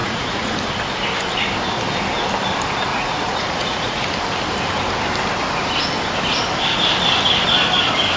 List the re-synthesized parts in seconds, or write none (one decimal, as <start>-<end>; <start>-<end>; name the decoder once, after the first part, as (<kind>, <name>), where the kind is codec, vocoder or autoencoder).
0.0-0.5 (vocoder, Vocos); 2.9-4.0